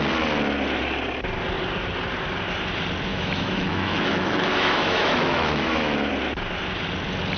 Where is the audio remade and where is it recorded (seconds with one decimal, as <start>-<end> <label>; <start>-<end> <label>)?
0.0-3.1 recorded; 3.1-6.1 remade; 6.1-7.4 recorded